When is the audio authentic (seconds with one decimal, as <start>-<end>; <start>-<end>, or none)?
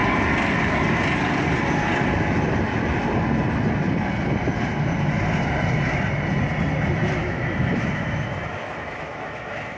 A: 0.0-7.2